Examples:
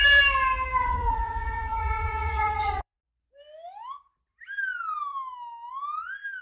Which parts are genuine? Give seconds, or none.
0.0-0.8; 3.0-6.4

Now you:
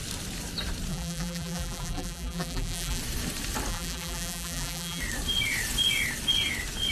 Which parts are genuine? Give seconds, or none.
0.0-0.9; 3.0-3.7; 5.0-6.9

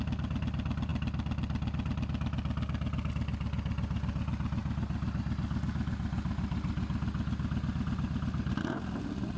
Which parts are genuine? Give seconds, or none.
0.0-9.4

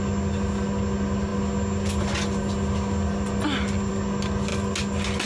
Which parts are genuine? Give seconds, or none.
0.0-5.3

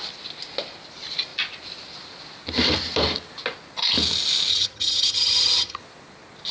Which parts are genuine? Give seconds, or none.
0.0-4.5; 5.8-6.5